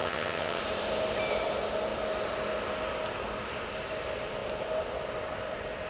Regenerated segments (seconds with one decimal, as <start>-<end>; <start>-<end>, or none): 0.0-0.6